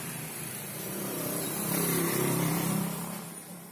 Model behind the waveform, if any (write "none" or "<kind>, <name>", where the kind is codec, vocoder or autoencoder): vocoder, BigVGAN v2